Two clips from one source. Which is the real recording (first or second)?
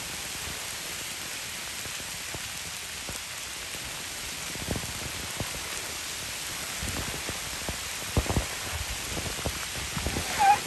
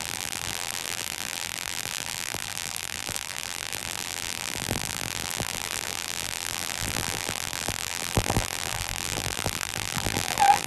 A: first